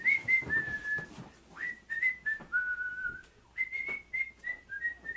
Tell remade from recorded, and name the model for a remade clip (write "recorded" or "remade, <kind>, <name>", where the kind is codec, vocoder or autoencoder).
recorded